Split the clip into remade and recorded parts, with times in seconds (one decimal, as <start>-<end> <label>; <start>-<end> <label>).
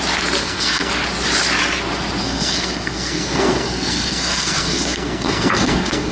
0.0-0.4 recorded; 0.4-0.9 remade; 0.9-2.2 recorded; 2.2-6.1 remade